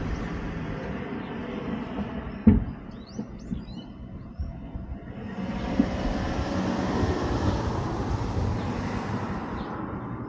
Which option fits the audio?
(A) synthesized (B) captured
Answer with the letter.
B